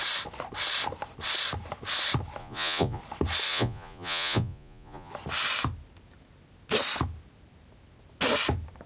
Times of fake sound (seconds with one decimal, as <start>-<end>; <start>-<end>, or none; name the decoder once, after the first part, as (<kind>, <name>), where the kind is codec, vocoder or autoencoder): 2.4-3.0 (vocoder, Vocos); 3.5-5.1